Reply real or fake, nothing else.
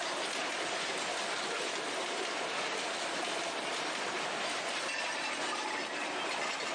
real